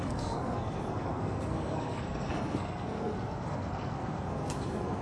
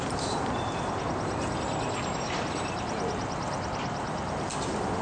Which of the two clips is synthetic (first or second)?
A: first